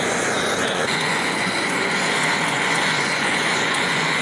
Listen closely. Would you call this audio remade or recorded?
remade